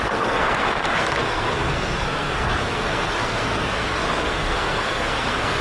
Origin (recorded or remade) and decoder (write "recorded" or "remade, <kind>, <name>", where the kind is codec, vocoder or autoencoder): remade, codec, SNAC